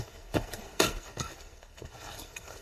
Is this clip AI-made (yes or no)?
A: yes